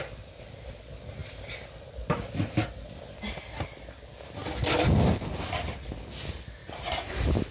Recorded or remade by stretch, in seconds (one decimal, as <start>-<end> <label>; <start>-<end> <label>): 0.0-6.6 recorded; 6.6-7.1 remade; 7.1-7.5 recorded